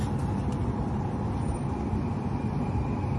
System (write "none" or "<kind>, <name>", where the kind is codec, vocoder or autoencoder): none